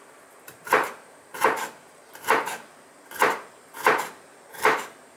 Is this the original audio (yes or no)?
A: no